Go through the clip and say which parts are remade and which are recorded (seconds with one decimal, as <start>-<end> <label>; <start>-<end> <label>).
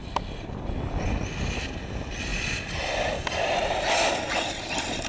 0.0-5.1 recorded